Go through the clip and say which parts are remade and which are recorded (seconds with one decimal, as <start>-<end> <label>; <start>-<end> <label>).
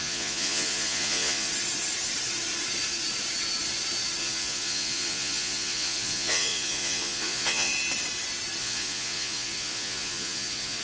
0.0-1.5 remade; 1.5-4.2 recorded; 4.2-7.7 remade; 7.7-8.6 recorded; 8.6-10.8 remade